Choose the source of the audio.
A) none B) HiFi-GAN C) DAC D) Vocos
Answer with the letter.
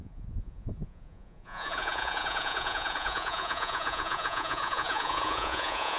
D